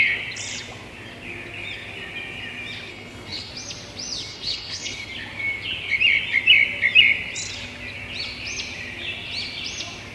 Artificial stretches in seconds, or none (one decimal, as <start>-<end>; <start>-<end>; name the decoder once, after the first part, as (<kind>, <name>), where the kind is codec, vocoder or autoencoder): 2.9-3.5 (codec, HILCodec); 4.3-5.1